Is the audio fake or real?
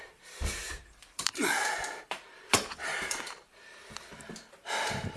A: fake